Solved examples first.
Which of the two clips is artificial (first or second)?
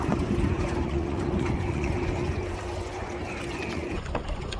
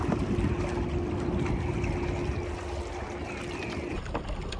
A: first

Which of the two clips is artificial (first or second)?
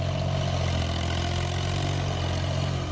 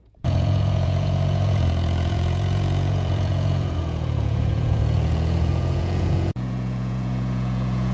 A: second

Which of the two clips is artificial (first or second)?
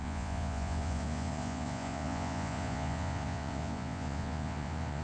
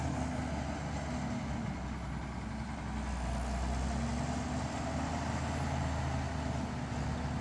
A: first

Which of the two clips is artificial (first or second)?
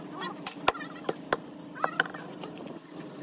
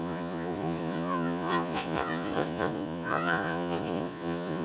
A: second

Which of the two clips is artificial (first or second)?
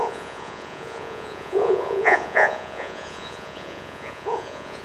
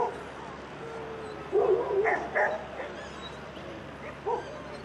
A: first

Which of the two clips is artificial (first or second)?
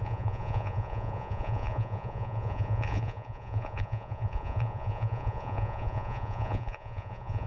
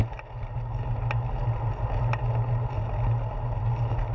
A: first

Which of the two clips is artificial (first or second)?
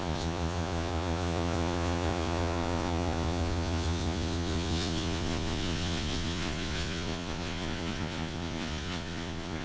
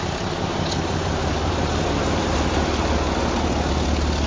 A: first